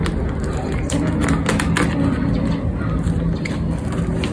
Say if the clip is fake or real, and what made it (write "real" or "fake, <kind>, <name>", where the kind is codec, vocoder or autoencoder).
real